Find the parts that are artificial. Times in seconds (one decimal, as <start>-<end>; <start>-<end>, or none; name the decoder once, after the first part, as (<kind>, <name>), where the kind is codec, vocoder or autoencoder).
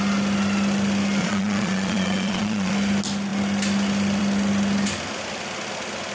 1.2-2.7 (vocoder, Vocos)